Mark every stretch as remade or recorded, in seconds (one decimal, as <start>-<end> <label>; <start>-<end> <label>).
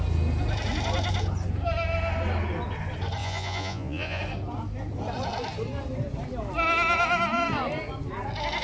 0.0-3.2 recorded; 3.2-4.2 remade; 4.2-8.6 recorded